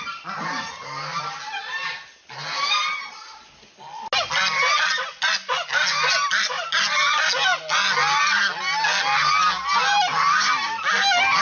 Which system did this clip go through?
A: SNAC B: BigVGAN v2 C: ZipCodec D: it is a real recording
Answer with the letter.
D